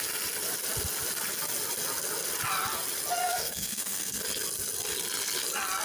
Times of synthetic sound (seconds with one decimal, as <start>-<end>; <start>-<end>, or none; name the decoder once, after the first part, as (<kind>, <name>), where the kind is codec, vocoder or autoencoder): 3.2-4.2 (codec, SNAC)